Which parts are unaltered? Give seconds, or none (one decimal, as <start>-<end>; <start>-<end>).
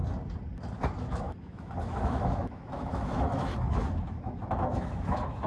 0.0-1.0